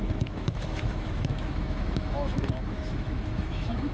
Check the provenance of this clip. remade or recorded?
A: remade